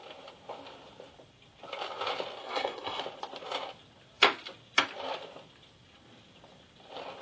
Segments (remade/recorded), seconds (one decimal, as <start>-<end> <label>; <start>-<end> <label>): 0.0-2.4 recorded; 2.4-3.0 remade; 3.0-7.2 recorded